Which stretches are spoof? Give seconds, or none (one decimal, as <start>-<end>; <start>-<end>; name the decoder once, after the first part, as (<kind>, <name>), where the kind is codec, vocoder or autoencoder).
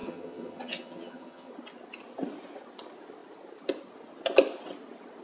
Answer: 0.0-1.5 (vocoder, HiFi-GAN)